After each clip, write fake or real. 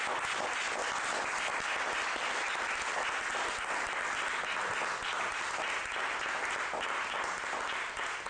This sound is real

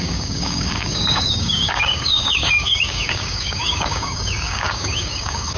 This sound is fake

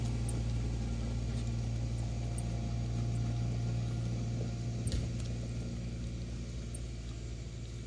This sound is real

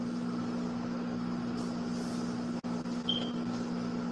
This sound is real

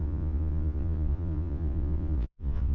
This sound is fake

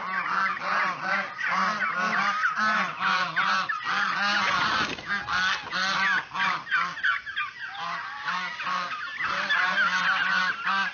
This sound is real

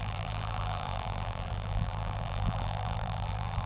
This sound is fake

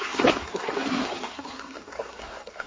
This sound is fake